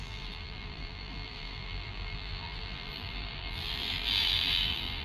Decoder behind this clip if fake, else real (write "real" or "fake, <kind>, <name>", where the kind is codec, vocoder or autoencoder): fake, vocoder, BigVGAN v2